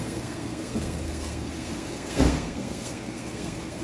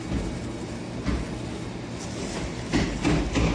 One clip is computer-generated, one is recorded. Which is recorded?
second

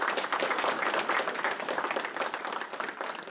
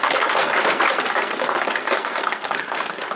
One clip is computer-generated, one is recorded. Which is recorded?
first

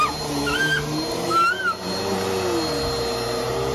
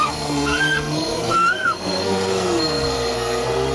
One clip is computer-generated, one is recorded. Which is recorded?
first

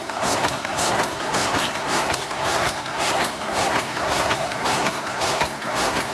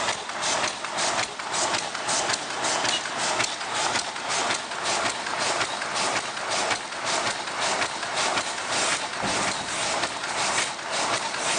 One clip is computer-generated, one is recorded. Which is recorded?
second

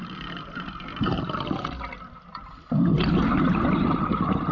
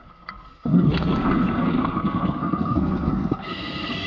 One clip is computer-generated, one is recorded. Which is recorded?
first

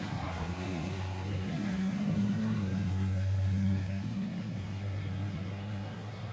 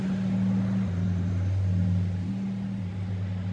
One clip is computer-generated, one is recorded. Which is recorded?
second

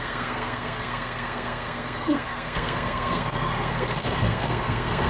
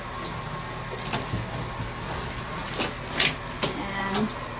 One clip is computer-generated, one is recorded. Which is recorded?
second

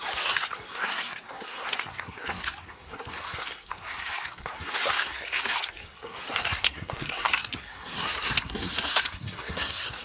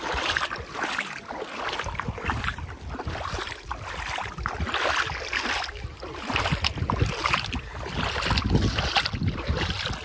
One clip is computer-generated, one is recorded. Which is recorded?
second